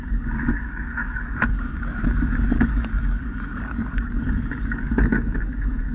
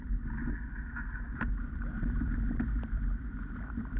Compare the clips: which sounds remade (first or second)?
first